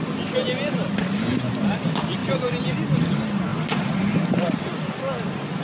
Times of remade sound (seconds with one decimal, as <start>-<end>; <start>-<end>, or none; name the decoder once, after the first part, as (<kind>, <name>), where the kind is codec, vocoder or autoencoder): none